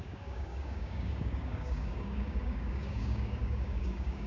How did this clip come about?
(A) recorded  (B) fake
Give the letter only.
B